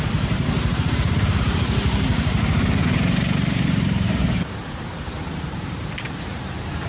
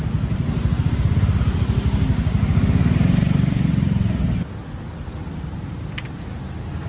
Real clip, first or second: second